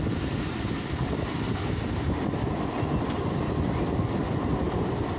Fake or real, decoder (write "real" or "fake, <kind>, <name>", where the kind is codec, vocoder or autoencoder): real